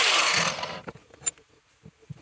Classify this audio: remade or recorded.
recorded